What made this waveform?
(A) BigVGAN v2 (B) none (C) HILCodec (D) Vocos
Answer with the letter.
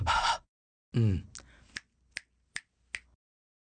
B